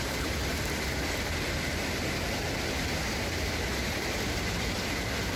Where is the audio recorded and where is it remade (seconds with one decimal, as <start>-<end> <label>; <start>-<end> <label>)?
0.0-5.4 recorded